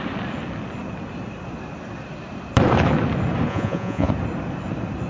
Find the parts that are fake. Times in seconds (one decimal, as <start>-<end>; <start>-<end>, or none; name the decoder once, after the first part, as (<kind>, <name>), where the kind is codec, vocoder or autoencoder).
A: 3.5-4.1 (vocoder, Vocos)